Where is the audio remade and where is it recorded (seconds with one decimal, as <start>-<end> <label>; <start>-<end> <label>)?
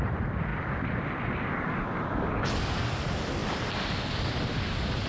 0.0-5.1 recorded